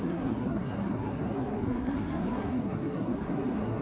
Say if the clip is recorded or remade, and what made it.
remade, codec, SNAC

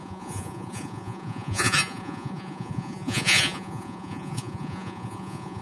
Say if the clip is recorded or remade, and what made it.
remade, vocoder, Vocos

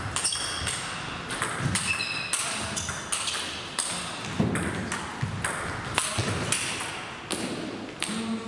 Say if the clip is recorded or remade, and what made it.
recorded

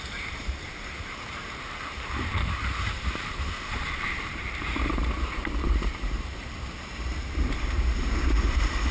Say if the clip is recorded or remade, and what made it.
remade, vocoder, BigVGAN v2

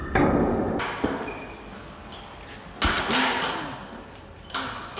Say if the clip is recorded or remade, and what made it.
recorded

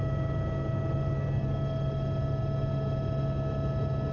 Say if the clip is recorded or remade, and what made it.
recorded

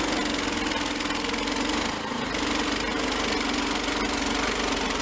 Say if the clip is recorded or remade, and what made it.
recorded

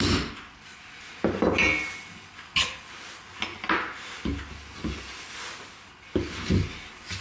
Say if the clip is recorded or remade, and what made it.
recorded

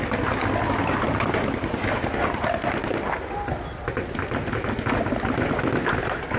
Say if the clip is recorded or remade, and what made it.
recorded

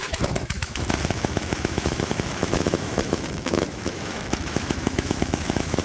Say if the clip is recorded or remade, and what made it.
remade, autoencoder, DAC-VAE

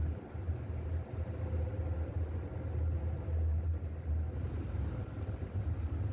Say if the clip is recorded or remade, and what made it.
recorded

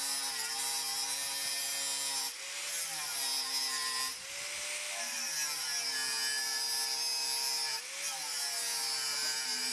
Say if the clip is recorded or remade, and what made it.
recorded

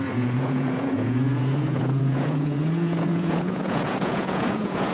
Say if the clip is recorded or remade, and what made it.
remade, vocoder, Vocos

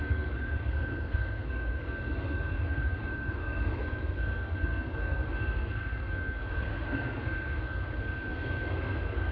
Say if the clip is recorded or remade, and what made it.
remade, codec, SNAC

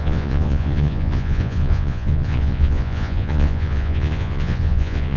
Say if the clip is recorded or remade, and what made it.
remade, vocoder, Vocos